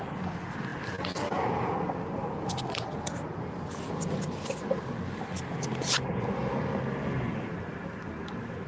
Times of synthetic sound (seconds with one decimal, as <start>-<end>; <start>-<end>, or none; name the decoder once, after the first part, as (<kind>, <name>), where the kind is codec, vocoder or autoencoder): none